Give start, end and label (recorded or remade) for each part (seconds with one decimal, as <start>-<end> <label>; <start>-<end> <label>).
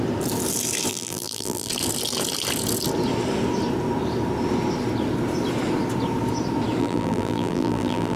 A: 0.0-0.9 recorded; 0.9-1.7 remade; 1.7-6.8 recorded; 6.8-8.2 remade